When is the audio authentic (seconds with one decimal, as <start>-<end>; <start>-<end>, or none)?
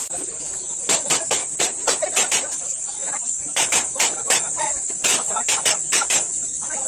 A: 1.4-2.5